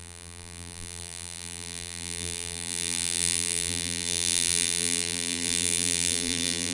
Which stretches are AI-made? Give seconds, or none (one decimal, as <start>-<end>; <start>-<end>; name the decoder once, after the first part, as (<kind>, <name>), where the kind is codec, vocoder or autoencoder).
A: 0.0-6.7 (vocoder, BigVGAN v2)